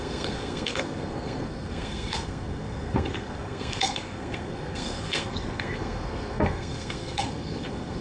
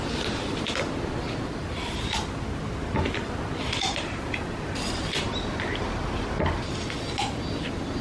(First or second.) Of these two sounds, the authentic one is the second